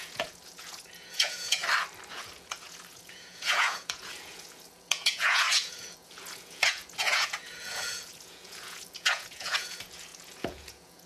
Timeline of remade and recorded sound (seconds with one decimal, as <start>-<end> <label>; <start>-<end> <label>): 0.0-1.6 remade; 1.6-2.1 recorded; 2.1-11.1 remade